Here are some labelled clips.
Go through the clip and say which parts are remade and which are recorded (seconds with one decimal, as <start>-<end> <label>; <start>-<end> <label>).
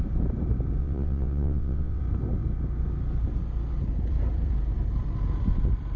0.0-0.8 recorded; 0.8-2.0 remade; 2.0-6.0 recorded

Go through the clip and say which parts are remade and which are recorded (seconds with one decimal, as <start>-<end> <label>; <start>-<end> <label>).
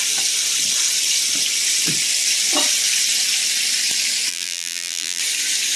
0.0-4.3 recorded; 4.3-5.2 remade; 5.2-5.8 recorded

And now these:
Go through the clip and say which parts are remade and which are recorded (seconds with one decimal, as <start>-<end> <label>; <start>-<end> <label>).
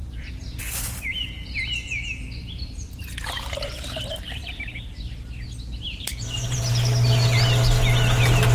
0.0-0.6 remade; 0.6-2.4 recorded; 2.4-4.4 remade; 4.4-5.7 recorded; 5.7-6.6 remade; 6.6-8.5 recorded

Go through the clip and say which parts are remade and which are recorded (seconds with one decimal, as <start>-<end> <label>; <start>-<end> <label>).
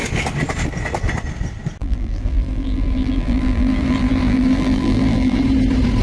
0.0-1.8 recorded; 1.8-5.4 remade; 5.4-6.0 recorded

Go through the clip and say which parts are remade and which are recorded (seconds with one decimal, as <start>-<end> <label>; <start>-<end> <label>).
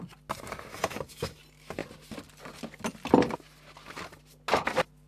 0.0-0.7 recorded; 0.7-1.4 remade; 1.4-5.1 recorded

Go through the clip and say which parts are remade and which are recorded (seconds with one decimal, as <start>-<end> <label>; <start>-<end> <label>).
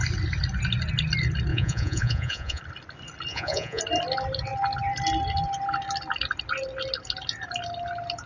0.0-1.5 recorded; 1.5-2.6 remade; 2.6-3.3 recorded; 3.3-3.8 remade; 3.8-8.3 recorded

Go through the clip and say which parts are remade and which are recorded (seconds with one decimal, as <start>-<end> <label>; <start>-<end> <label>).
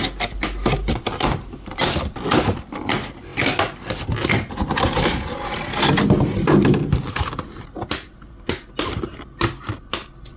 0.0-10.4 recorded